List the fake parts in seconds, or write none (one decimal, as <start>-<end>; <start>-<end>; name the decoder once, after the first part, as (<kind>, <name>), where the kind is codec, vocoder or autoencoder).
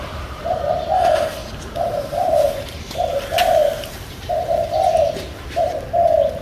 0.0-6.4 (vocoder, BigVGAN v2)